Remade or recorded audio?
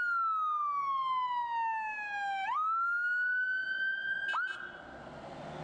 recorded